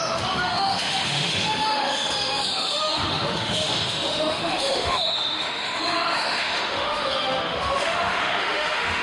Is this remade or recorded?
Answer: remade